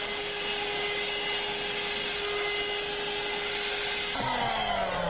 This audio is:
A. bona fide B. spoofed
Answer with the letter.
A